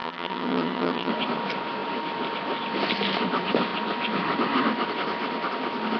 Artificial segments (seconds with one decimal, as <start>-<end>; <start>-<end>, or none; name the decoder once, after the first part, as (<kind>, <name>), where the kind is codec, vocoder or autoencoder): 0.0-1.1 (vocoder, HiFi-GAN)